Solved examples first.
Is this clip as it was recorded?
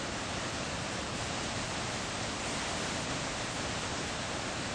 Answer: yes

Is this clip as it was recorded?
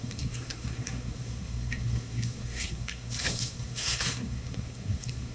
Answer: no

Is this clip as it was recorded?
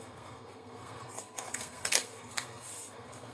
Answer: no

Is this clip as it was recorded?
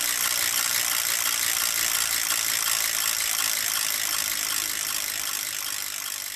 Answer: yes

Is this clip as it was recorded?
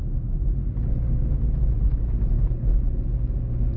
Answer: yes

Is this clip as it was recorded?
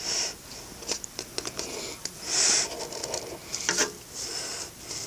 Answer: yes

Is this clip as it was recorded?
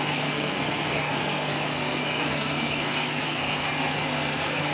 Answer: no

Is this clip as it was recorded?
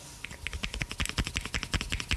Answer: yes